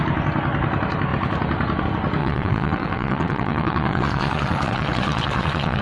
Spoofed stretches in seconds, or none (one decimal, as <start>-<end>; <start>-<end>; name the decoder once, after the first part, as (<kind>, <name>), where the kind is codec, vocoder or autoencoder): 2.2-5.8 (vocoder, WaveNeXt)